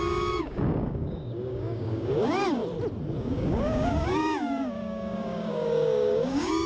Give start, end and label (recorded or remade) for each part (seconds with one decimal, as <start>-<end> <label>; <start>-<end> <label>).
0.0-2.6 remade; 2.6-3.2 recorded; 3.2-6.7 remade